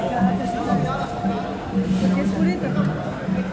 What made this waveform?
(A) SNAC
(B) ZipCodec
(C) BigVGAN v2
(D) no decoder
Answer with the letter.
D